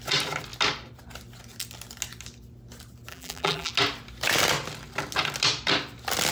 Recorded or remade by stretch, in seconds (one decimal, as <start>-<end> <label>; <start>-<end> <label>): 0.0-3.1 recorded; 3.1-3.7 remade; 3.7-6.3 recorded